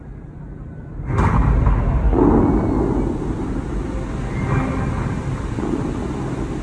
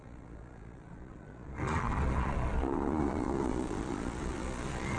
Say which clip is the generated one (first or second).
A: second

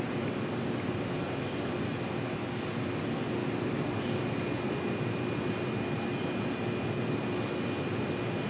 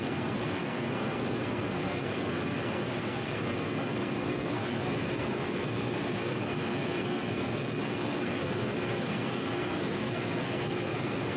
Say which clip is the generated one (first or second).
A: second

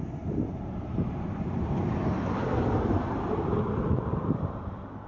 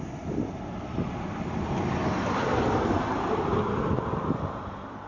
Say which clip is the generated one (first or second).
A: first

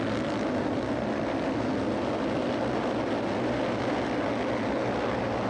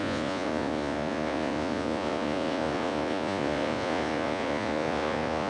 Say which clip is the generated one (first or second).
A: second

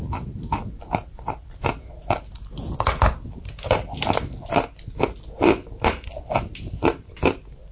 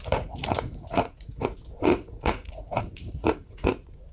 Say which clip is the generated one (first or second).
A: second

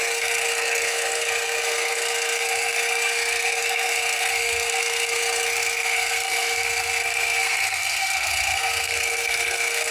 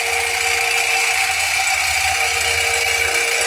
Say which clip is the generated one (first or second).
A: first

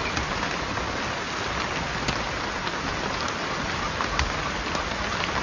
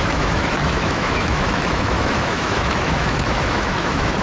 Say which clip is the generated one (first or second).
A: second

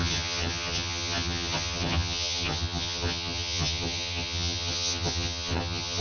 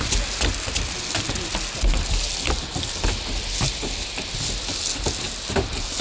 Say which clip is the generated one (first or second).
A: first